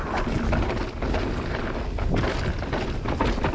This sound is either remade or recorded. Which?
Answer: recorded